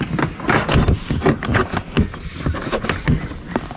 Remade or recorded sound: recorded